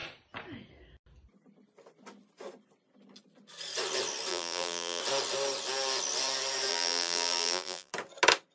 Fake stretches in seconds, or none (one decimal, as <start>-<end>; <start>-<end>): 4.3-5.0; 6.7-7.9